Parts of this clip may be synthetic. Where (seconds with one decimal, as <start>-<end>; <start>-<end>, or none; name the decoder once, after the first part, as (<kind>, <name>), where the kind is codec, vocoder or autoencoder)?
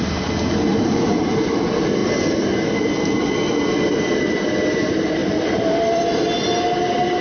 5.2-6.0 (vocoder, BigVGAN v2)